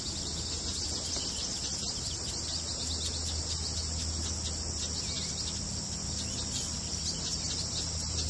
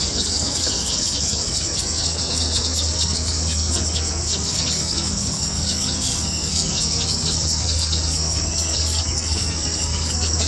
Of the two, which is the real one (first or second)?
first